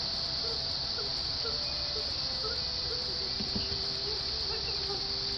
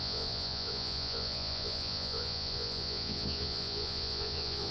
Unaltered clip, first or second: first